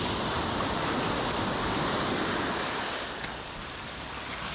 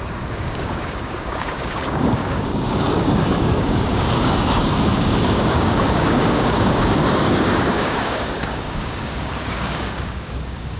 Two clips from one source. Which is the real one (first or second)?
first